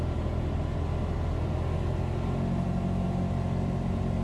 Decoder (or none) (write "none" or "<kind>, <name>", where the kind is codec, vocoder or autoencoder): none